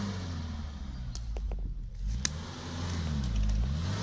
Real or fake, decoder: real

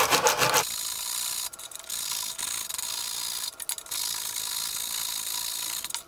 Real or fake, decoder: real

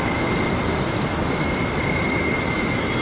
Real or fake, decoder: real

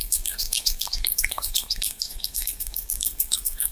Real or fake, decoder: fake, codec, SNAC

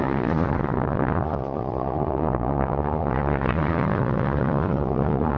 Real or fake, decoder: fake, vocoder, Vocos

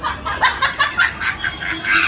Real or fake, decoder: real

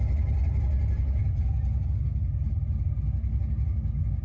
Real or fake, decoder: real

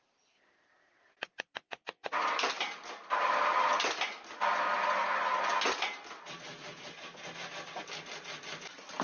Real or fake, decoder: real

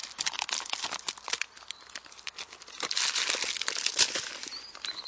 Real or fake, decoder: real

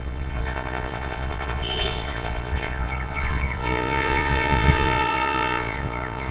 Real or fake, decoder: fake, vocoder, Vocos